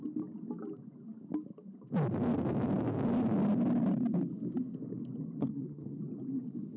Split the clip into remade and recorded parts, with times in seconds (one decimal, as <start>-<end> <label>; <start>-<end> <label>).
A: 0.0-5.4 recorded; 5.4-6.0 remade; 6.0-6.8 recorded